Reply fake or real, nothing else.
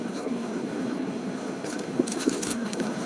fake